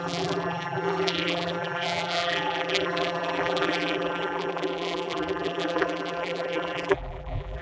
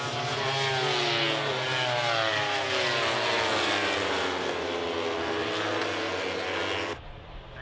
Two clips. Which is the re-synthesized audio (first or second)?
first